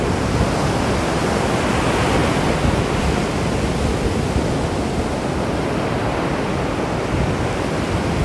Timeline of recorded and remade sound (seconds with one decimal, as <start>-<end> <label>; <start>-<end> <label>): 0.0-8.2 recorded